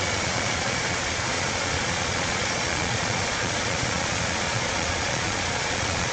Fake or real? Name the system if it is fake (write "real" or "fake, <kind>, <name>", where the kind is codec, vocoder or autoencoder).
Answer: fake, vocoder, Vocos